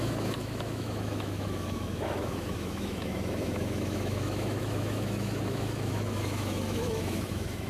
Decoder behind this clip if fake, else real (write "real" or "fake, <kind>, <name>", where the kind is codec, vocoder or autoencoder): fake, autoencoder, DAC-VAE